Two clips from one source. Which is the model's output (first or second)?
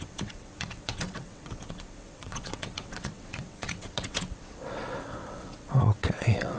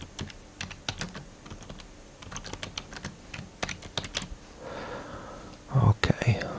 first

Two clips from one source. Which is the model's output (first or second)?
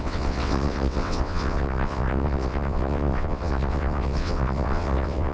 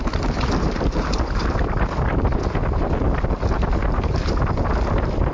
first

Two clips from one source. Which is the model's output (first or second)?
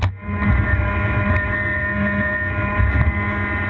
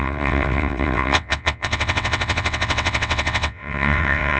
second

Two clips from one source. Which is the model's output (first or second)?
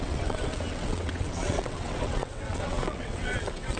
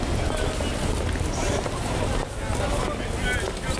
first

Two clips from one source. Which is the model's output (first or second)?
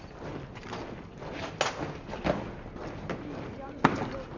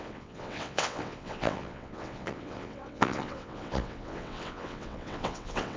second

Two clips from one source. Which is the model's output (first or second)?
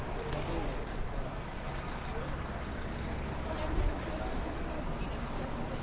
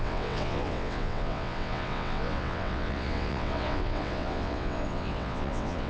second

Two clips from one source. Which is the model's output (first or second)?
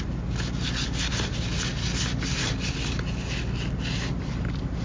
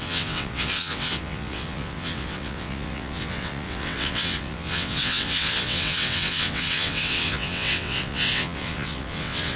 second